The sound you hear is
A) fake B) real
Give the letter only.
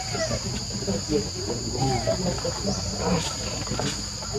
B